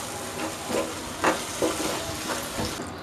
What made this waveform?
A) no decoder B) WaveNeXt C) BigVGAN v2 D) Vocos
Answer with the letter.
A